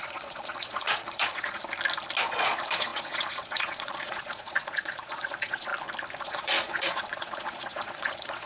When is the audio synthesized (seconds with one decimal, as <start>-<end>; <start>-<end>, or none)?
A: 0.0-1.6; 2.3-5.7; 6.2-8.5